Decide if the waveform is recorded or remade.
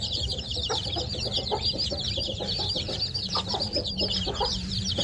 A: remade